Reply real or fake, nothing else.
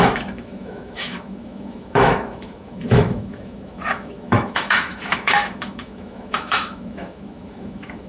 fake